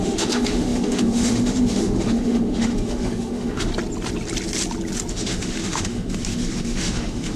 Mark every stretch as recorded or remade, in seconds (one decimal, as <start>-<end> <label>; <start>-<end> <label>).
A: 0.0-3.7 remade; 3.7-5.1 recorded; 5.1-7.4 remade